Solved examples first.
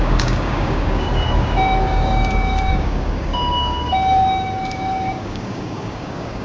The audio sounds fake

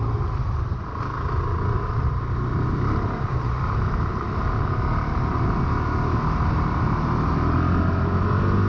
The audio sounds real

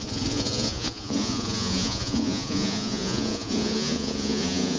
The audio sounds fake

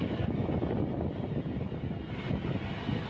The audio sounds real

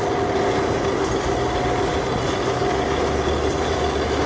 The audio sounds real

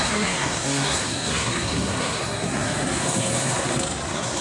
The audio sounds fake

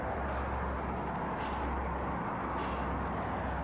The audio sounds real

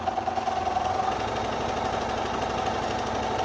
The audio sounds real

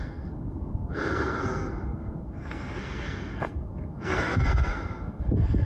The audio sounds fake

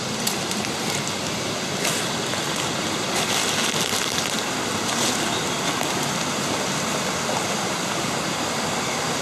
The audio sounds real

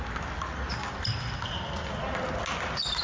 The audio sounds real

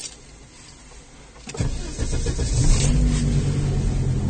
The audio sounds real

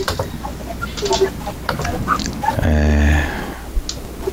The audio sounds real